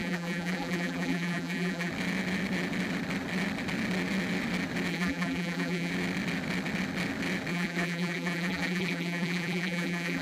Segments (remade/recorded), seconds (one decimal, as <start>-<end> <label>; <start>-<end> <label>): 0.0-1.9 remade; 1.9-4.9 recorded; 4.9-5.9 remade; 5.9-7.5 recorded; 7.5-10.2 remade